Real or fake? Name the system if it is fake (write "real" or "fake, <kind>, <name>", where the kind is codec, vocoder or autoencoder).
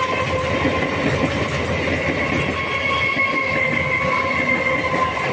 real